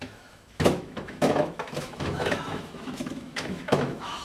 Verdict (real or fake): fake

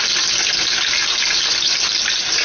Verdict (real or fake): real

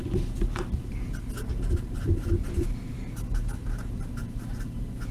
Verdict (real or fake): real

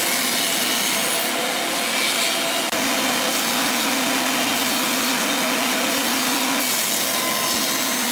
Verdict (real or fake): real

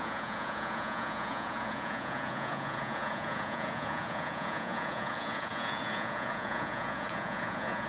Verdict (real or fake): fake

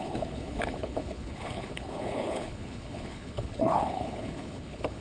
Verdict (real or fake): fake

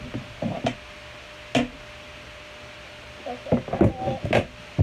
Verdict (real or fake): real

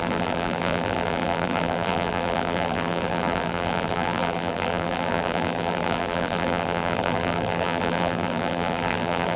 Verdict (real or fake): fake